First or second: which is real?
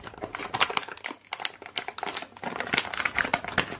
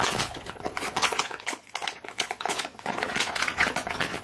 first